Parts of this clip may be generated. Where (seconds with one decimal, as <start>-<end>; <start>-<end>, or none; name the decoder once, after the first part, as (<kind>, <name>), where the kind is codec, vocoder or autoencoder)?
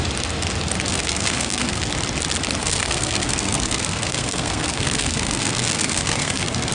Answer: 0.9-1.8 (codec, SNAC); 2.6-6.7